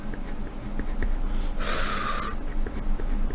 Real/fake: real